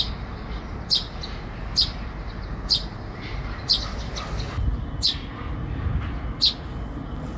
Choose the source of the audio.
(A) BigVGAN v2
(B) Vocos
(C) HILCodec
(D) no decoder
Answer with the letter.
D